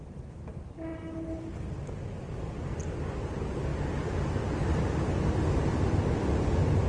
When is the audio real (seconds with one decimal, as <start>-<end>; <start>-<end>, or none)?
0.0-6.9